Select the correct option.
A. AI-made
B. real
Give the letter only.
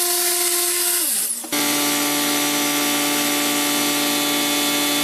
B